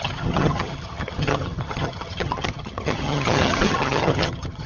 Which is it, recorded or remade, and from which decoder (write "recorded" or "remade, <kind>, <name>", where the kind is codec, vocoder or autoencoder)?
remade, vocoder, HiFi-GAN